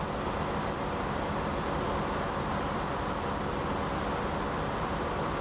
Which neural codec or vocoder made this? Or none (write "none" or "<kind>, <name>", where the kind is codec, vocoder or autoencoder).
none